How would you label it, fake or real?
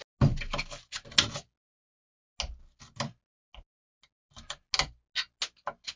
real